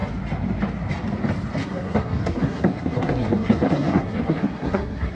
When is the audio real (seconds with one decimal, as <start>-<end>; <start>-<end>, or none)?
0.0-1.6